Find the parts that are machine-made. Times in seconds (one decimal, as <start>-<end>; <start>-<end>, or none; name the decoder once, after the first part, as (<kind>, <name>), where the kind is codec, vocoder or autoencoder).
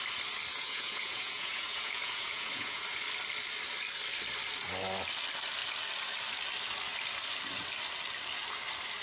0.5-2.8 (vocoder, Vocos)